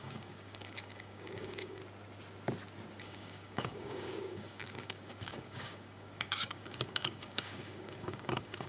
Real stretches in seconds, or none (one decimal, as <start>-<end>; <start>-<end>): 1.8-3.0